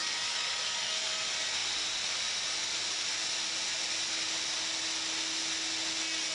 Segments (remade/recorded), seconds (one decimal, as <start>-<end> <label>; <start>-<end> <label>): 0.0-1.1 remade; 1.1-6.3 recorded